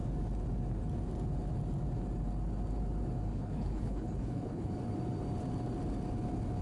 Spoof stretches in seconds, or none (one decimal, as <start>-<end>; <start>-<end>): 3.3-4.7